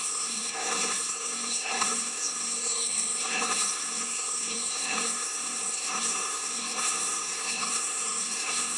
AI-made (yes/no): yes